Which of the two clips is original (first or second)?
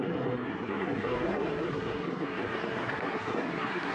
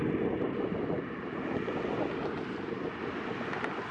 second